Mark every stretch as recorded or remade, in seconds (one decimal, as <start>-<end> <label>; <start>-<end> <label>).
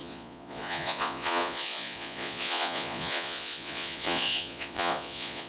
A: 0.0-5.5 remade